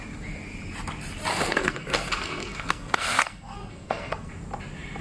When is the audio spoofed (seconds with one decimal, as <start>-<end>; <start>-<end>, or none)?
1.3-4.3